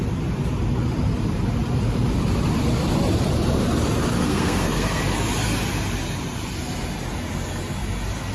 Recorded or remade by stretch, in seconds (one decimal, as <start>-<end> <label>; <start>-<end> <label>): 0.0-4.2 recorded; 4.2-5.0 remade; 5.0-8.3 recorded